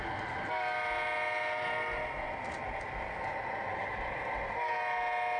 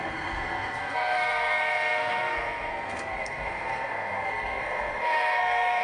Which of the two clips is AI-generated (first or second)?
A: second